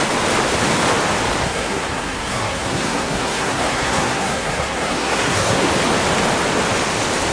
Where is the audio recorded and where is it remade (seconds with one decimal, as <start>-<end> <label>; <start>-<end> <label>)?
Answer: 0.0-1.4 recorded; 1.4-5.7 remade; 5.7-7.3 recorded